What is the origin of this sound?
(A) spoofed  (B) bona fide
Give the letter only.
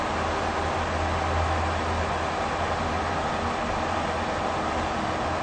B